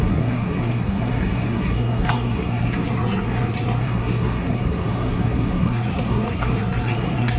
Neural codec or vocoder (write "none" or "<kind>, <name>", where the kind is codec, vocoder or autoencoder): codec, SNAC